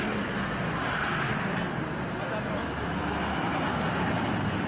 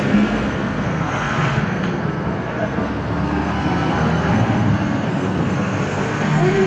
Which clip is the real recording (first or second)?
first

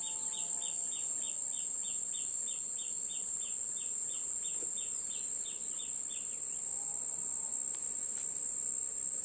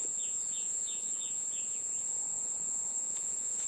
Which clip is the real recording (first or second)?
first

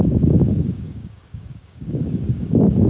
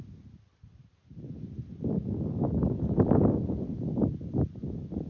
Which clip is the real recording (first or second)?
second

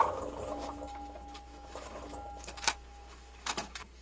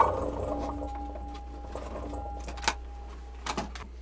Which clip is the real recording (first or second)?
second